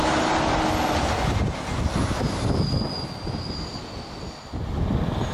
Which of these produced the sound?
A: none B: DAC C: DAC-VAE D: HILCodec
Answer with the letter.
A